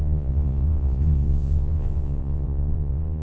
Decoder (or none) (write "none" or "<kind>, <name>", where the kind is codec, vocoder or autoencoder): vocoder, Vocos